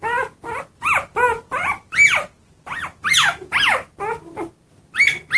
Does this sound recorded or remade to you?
recorded